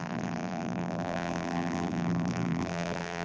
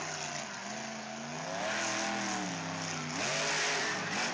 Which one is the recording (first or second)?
second